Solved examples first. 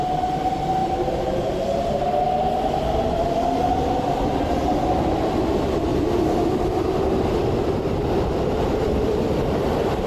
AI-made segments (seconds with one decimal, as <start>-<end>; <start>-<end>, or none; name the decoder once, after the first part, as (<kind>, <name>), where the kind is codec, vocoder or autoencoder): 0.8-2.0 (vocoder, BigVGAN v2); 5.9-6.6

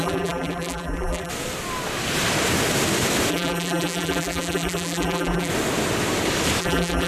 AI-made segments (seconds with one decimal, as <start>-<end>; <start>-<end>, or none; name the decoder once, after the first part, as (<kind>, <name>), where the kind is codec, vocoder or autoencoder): 0.0-1.3 (vocoder, BigVGAN v2); 3.3-5.5; 6.6-7.1

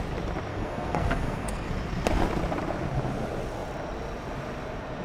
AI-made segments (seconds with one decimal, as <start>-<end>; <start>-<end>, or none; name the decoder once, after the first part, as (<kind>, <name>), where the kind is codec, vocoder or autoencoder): 0.5-1.7 (codec, SNAC)

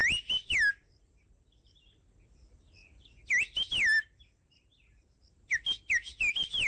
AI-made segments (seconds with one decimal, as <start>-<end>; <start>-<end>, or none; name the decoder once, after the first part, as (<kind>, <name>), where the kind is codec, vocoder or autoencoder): none

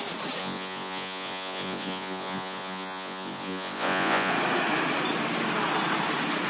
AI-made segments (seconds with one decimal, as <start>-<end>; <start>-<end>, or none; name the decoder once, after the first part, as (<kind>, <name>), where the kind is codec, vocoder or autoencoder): 0.4-4.3 (vocoder, Vocos)

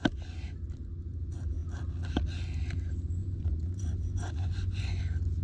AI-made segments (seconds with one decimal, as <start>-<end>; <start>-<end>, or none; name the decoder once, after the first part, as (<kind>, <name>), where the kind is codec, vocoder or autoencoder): 3.2-5.0 (vocoder, Vocos)

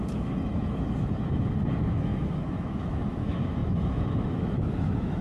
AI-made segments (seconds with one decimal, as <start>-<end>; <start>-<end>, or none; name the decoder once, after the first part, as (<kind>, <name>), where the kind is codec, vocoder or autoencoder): 0.0-5.2 (autoencoder, DAC-VAE)